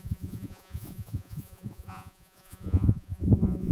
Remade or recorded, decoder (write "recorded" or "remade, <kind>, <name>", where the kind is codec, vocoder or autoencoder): remade, vocoder, Vocos